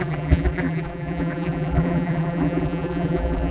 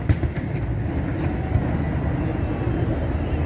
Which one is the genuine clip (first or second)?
second